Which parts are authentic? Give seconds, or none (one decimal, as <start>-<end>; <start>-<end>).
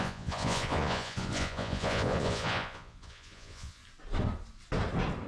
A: 3.8-5.3